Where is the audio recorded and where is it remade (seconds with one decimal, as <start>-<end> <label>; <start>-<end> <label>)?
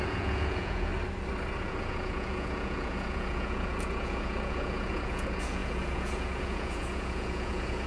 0.0-0.9 remade; 0.9-1.6 recorded; 1.6-7.9 remade